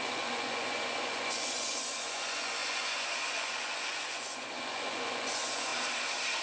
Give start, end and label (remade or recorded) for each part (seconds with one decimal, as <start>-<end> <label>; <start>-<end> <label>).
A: 0.0-5.7 remade; 5.7-6.4 recorded

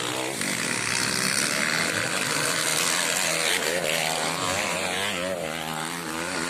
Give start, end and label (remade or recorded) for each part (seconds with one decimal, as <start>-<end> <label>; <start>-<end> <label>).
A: 0.0-6.5 recorded